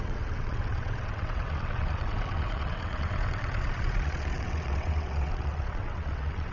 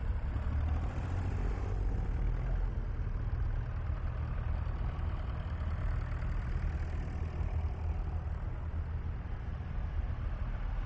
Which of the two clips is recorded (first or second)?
second